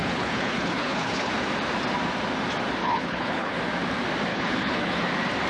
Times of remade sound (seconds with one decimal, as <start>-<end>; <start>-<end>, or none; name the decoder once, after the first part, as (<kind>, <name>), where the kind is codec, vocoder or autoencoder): 0.0-1.3 (codec, HILCodec); 2.8-3.6; 4.3-5.0